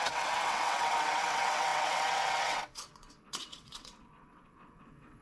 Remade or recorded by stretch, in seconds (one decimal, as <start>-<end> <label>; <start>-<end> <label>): 0.0-5.2 remade

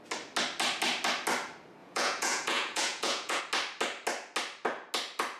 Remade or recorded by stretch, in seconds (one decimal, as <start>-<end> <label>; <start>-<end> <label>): 0.0-1.8 recorded; 1.8-3.4 remade; 3.4-5.4 recorded

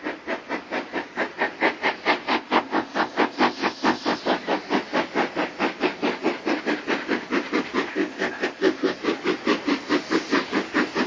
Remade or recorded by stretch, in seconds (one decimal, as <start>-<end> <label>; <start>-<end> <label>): 0.0-2.3 recorded; 2.3-4.2 remade; 4.2-7.9 recorded; 7.9-9.0 remade; 9.0-11.1 recorded

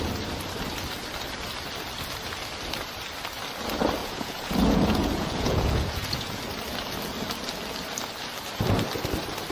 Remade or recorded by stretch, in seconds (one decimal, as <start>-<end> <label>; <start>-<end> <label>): 0.0-4.0 recorded; 4.0-6.4 remade; 6.4-9.5 recorded

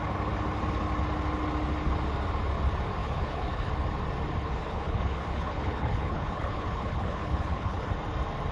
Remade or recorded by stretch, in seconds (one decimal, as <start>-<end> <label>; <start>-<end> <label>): 0.0-3.0 recorded; 3.0-3.7 remade; 3.7-4.4 recorded; 4.4-7.9 remade; 7.9-8.5 recorded

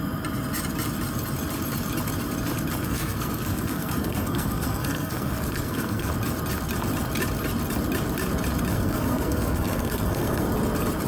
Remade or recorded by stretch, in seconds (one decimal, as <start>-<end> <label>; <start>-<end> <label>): 0.0-2.8 recorded; 2.8-6.1 remade; 6.1-8.7 recorded; 8.7-10.5 remade; 10.5-11.1 recorded